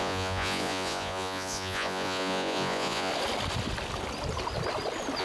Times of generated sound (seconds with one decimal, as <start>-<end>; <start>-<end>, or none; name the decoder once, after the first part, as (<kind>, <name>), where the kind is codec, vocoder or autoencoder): 0.0-3.1 (vocoder, Vocos)

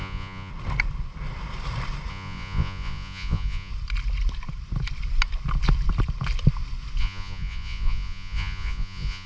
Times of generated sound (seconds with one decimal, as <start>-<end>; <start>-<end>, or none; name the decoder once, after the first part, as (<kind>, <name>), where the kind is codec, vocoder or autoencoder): 0.0-0.5 (vocoder, Vocos); 2.1-3.7; 7.0-9.3

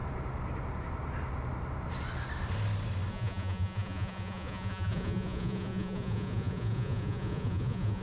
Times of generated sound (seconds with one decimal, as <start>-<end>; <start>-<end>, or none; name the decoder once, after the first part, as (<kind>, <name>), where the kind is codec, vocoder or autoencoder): 3.1-8.0 (vocoder, Vocos)

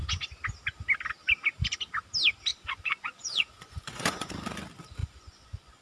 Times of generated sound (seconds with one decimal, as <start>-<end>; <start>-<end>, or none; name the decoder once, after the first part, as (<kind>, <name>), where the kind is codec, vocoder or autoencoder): 2.5-4.3 (vocoder, Vocos); 5.0-5.8

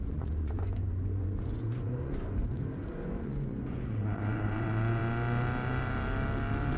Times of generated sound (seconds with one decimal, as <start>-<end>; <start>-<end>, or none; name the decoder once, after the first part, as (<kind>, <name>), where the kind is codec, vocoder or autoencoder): 0.0-5.0 (vocoder, Vocos)